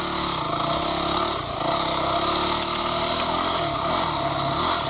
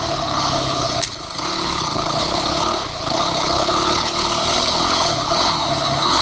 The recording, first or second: first